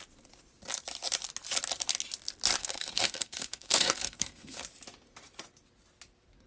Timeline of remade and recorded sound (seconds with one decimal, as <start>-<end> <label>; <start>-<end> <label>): 0.0-2.6 recorded; 2.6-4.6 remade; 4.6-6.5 recorded